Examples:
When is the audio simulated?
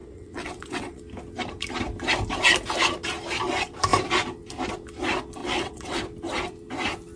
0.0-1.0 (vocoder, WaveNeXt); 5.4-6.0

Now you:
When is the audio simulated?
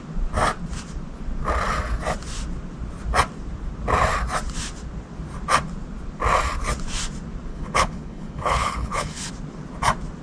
7.5-9.3 (codec, HILCodec)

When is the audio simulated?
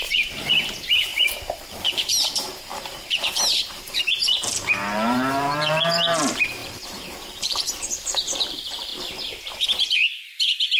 0.0-8.9 (vocoder, BigVGAN v2)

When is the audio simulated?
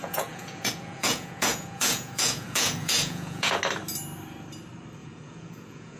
0.0-3.6 (vocoder, Vocos); 5.0-6.0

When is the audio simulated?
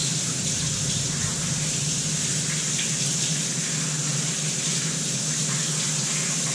0.0-2.1 (vocoder, BigVGAN v2)